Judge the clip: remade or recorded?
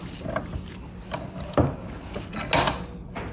recorded